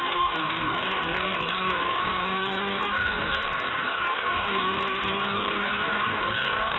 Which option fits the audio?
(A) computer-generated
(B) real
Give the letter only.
A